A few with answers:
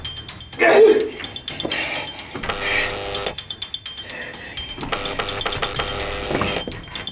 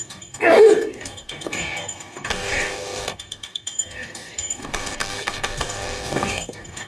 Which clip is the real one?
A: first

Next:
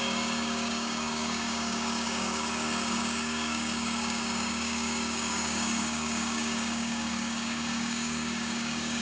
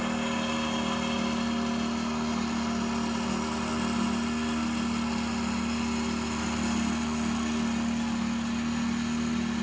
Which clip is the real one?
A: second